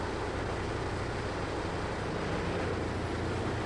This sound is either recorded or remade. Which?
recorded